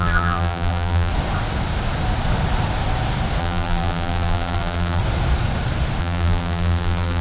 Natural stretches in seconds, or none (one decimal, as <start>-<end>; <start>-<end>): 1.1-3.4; 5.0-6.0